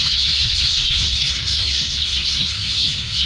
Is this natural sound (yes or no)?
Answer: no